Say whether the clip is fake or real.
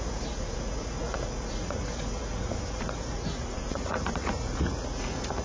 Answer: fake